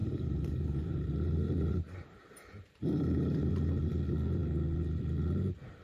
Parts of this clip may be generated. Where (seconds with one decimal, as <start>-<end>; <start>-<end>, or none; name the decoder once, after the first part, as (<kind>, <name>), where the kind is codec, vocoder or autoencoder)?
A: 0.0-3.5 (vocoder, BigVGAN v2)